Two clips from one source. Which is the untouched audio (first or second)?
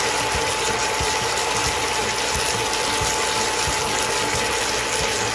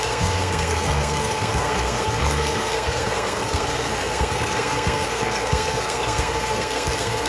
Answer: first